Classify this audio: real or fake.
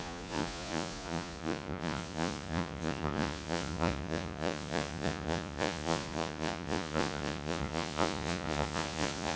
fake